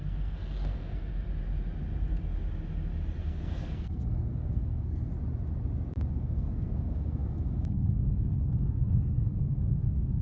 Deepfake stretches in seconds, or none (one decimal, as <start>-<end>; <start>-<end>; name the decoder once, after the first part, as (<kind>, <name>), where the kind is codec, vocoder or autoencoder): 0.0-1.1 (codec, SNAC); 3.2-5.1; 6.1-10.2